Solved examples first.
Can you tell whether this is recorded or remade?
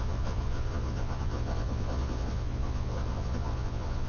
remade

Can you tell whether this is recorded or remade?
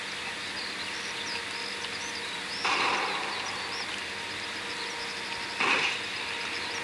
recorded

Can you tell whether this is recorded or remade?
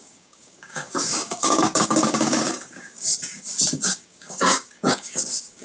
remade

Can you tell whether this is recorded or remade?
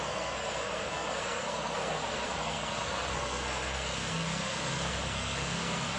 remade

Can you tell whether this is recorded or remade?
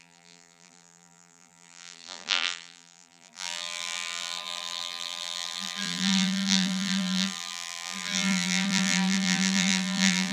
remade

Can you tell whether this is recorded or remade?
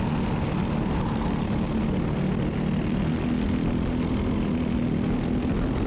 recorded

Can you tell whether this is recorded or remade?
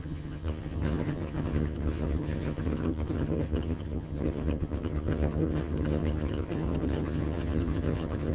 remade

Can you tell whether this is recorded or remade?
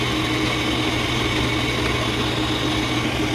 recorded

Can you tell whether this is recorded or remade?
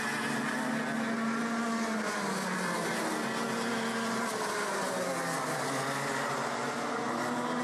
recorded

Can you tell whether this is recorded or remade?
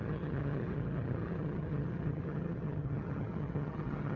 remade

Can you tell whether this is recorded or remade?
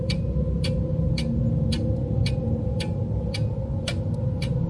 recorded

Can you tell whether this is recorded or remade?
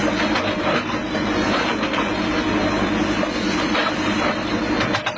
recorded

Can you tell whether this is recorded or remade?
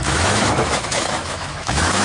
remade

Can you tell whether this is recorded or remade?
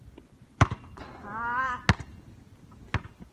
recorded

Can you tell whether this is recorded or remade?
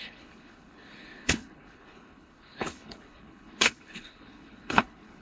remade